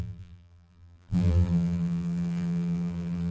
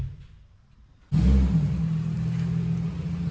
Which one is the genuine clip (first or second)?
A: second